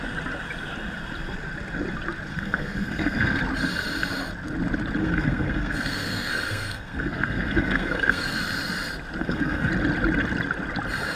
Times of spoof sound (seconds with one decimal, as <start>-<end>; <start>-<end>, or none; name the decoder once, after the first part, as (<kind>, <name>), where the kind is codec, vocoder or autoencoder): 2.3-3.4 (codec, SNAC); 5.0-8.4; 9.2-9.7